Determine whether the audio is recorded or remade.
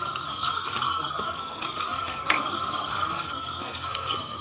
remade